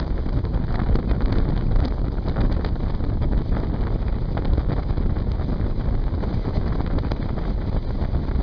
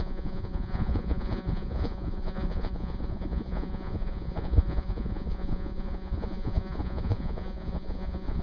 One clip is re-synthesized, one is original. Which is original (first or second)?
first